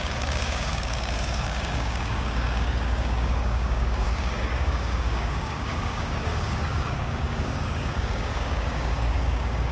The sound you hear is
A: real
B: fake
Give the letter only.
B